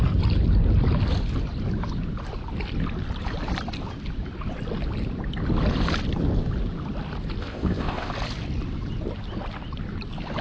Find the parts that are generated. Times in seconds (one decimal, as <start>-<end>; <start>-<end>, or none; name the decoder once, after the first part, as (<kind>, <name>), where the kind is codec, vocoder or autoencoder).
7.4-8.1 (codec, ZipCodec)